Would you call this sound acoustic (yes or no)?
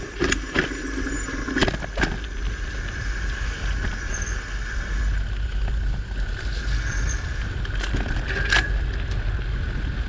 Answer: yes